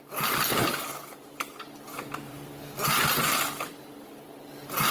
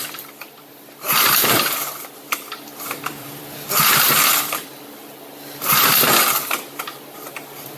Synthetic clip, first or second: second